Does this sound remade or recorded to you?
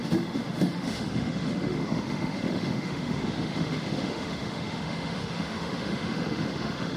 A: remade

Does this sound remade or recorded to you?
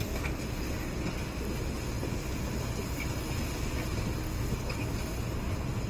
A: recorded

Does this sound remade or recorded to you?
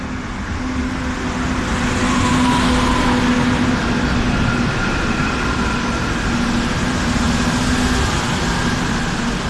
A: recorded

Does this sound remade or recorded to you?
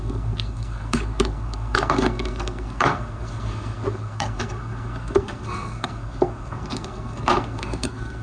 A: remade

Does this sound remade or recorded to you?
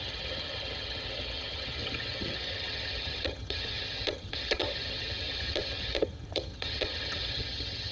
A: remade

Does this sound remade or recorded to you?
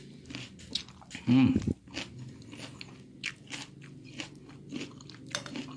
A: recorded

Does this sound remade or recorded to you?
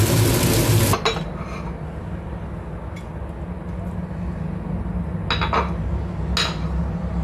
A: recorded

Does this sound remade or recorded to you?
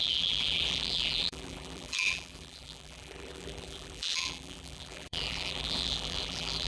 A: remade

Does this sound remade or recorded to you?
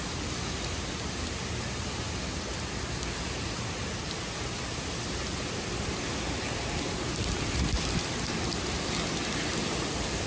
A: remade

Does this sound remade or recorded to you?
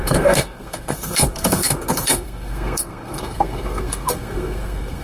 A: remade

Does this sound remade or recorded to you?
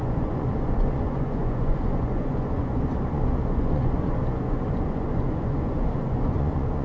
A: remade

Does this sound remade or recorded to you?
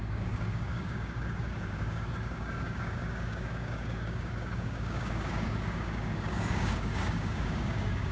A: remade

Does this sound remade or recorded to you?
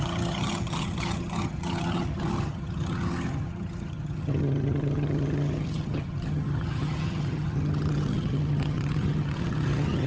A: remade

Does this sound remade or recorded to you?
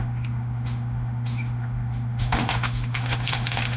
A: remade